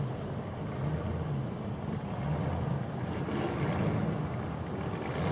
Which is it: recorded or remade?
recorded